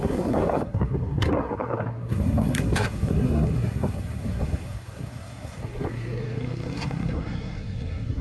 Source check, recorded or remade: remade